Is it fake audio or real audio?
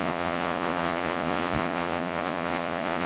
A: fake